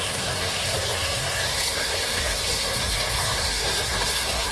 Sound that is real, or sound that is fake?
fake